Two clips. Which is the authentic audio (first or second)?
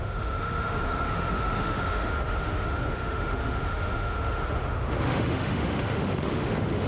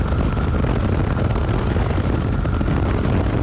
second